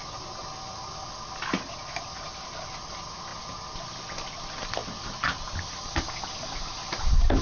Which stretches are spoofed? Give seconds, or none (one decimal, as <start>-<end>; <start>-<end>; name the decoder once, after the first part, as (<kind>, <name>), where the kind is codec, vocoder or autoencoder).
4.8-6.0 (vocoder, BigVGAN v2)